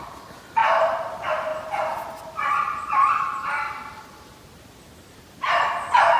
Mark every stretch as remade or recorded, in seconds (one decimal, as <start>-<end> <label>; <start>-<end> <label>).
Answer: 0.0-6.2 recorded